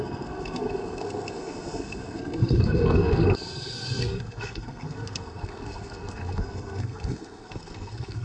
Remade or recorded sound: remade